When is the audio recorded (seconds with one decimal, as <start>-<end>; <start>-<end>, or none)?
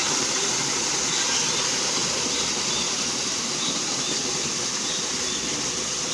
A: 0.9-6.1